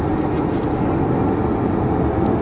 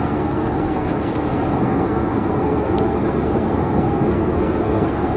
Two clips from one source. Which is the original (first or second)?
first